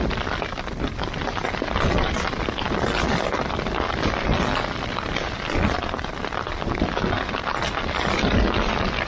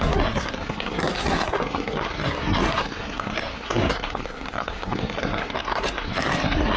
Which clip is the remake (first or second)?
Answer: second